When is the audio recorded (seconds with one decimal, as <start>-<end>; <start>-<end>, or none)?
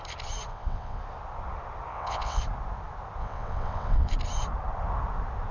0.0-0.5; 1.0-1.9; 2.4-3.2; 4.1-5.5